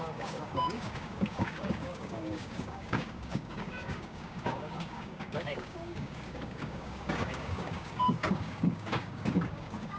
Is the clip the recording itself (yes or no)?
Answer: no